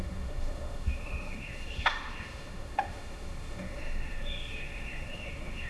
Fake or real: fake